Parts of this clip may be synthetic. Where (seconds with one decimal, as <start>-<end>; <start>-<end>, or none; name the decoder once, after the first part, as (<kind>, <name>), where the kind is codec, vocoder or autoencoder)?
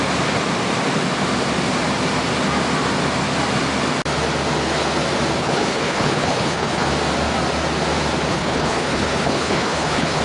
5.4-6.9 (codec, HILCodec); 8.3-10.2